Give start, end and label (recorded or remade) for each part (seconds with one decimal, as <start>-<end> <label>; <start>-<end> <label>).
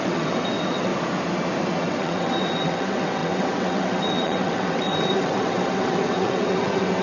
0.0-0.9 remade; 0.9-1.8 recorded; 1.8-7.0 remade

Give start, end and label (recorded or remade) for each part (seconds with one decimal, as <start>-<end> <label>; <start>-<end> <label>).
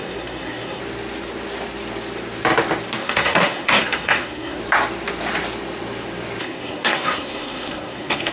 0.0-0.8 remade; 0.8-3.0 recorded; 3.0-4.6 remade; 4.6-6.4 recorded; 6.4-8.3 remade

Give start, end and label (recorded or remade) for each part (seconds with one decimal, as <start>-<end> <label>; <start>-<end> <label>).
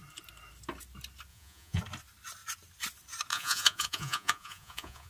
0.0-1.3 recorded; 1.3-1.8 remade; 1.8-3.3 recorded; 3.3-5.1 remade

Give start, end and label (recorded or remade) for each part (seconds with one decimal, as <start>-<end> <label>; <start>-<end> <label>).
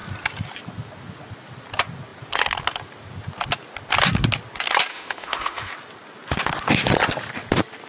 0.0-4.9 recorded; 4.9-5.7 remade; 5.7-7.9 recorded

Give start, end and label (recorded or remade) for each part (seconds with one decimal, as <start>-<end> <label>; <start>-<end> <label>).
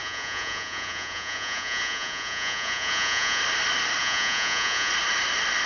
0.0-3.4 remade; 3.4-4.0 recorded; 4.0-4.9 remade; 4.9-5.7 recorded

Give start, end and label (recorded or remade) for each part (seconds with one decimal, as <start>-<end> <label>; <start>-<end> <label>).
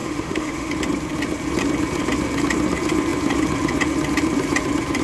0.0-0.7 remade; 0.7-5.0 recorded